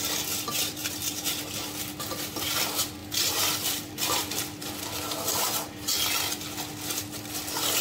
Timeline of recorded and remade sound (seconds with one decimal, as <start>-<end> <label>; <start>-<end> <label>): 0.0-3.0 recorded; 3.0-4.8 remade; 4.8-7.8 recorded